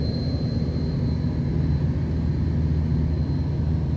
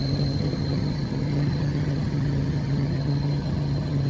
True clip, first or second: first